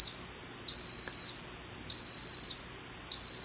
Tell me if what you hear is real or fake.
fake